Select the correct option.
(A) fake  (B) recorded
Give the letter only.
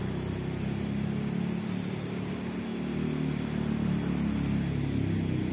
B